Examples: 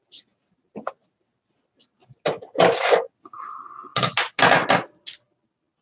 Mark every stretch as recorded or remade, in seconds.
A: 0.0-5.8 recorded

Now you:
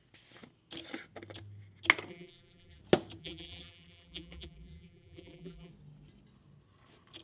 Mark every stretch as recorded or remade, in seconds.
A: 0.0-2.1 recorded; 2.1-2.8 remade; 2.8-3.2 recorded; 3.2-5.7 remade; 5.7-7.2 recorded

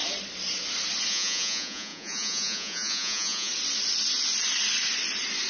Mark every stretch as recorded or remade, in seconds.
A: 0.0-1.1 recorded; 1.1-3.5 remade; 3.5-5.5 recorded

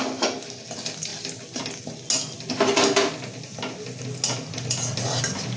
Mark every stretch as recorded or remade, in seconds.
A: 0.0-5.6 recorded